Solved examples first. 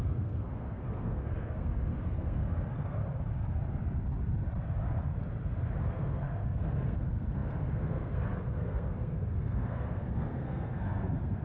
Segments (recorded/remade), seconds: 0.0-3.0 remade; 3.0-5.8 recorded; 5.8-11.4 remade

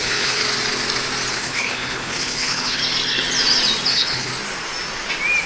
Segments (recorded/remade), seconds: 0.0-0.4 remade; 0.4-1.3 recorded; 1.3-2.8 remade; 2.8-3.9 recorded; 3.9-4.3 remade; 4.3-5.5 recorded

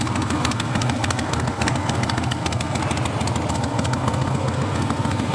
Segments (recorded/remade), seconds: 0.0-2.8 remade; 2.8-3.5 recorded; 3.5-5.3 remade

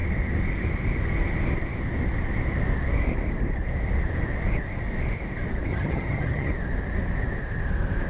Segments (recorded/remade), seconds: 0.0-5.7 recorded; 5.7-6.5 remade; 6.5-8.1 recorded

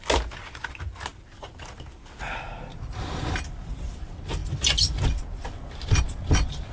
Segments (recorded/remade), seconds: 0.0-6.7 recorded

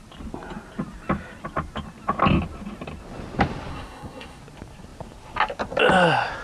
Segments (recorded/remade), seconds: 0.0-3.7 recorded; 3.7-4.4 remade; 4.4-6.4 recorded

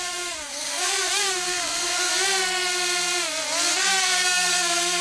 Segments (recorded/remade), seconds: 0.0-2.1 remade; 2.1-3.7 recorded; 3.7-5.0 remade

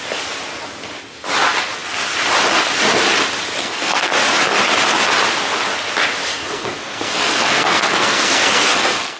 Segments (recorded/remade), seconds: 0.0-3.6 recorded; 3.6-4.1 remade; 4.1-6.3 recorded; 6.3-9.2 remade